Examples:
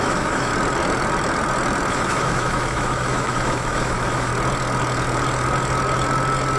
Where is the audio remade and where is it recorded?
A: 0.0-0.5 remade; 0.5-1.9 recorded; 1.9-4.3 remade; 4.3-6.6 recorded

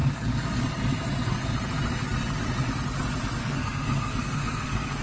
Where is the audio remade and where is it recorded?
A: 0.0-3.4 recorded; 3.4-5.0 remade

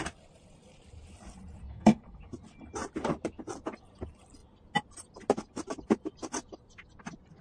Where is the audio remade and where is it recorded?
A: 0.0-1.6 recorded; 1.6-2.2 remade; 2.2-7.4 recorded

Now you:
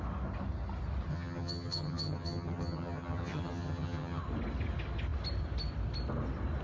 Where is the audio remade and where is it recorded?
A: 0.0-1.1 recorded; 1.1-4.2 remade; 4.2-6.6 recorded

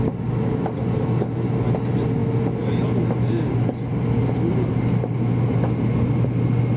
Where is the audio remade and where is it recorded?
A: 0.0-6.8 recorded